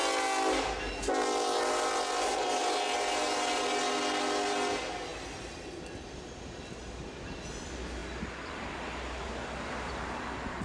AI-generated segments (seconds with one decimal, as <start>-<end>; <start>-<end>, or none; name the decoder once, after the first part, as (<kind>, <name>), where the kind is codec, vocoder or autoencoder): none